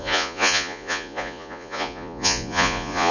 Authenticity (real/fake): fake